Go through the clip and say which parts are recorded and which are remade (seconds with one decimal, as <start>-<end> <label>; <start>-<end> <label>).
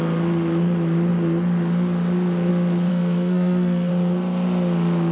0.0-2.9 recorded; 2.9-3.9 remade; 3.9-5.1 recorded